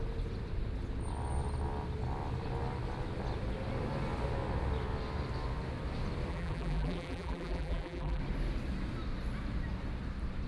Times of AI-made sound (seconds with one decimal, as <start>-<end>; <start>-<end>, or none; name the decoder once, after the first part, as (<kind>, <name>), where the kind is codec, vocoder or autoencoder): 6.3-8.2 (vocoder, BigVGAN v2)